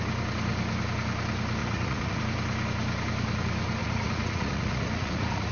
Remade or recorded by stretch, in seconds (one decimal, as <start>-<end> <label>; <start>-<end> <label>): 0.0-1.6 recorded; 1.6-2.2 remade; 2.2-3.8 recorded; 3.8-5.5 remade